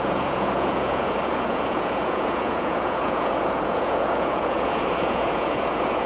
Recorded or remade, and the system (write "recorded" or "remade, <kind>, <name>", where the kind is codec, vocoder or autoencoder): remade, vocoder, Vocos